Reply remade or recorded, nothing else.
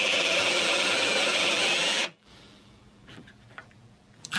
remade